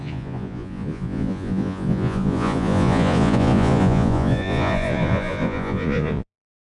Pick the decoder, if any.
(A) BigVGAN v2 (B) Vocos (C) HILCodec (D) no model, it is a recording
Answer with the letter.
B